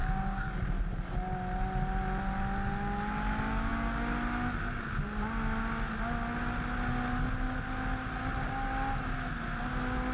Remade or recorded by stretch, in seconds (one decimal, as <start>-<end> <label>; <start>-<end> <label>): 0.0-0.5 remade; 0.5-10.1 recorded